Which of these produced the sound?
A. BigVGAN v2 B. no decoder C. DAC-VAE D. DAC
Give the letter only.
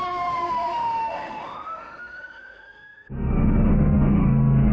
C